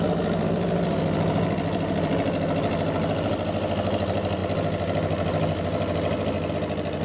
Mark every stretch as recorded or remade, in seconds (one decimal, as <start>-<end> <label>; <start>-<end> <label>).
0.0-7.0 recorded